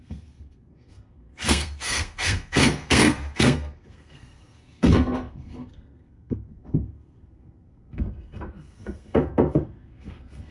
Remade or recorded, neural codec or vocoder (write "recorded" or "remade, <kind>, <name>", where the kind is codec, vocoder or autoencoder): remade, codec, SNAC